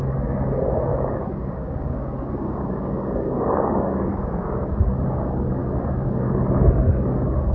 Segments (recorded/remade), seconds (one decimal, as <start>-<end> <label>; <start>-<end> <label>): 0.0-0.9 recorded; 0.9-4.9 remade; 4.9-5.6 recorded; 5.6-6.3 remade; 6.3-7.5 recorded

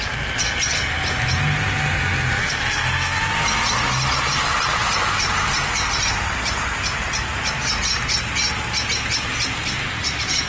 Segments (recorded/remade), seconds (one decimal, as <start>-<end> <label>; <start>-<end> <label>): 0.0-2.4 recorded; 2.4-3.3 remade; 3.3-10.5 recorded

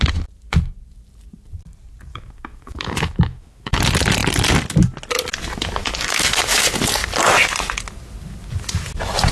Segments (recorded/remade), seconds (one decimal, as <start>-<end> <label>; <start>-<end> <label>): 0.0-2.1 recorded; 2.1-3.8 remade; 3.8-5.8 recorded; 5.8-6.6 remade; 6.6-9.3 recorded

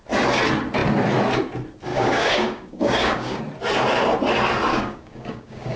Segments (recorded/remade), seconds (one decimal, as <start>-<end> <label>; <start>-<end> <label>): 0.0-1.9 recorded; 1.9-3.4 remade; 3.4-4.7 recorded; 4.7-5.8 remade

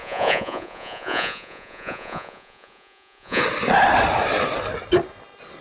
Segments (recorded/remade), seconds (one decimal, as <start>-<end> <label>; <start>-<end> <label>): 0.0-3.4 remade; 3.4-5.6 recorded

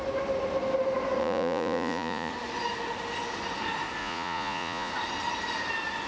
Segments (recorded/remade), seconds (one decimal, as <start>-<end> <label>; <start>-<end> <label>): 0.0-1.2 recorded; 1.2-2.3 remade; 2.3-4.0 recorded; 4.0-4.9 remade; 4.9-6.1 recorded

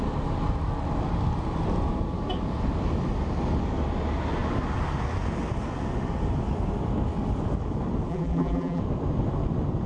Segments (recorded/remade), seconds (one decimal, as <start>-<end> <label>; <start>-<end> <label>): 0.0-8.1 recorded; 8.1-8.8 remade; 8.8-9.9 recorded

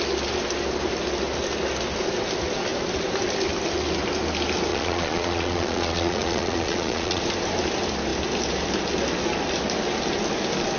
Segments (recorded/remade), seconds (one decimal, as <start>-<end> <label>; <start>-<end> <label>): 0.0-4.7 recorded; 4.7-7.2 remade; 7.2-10.8 recorded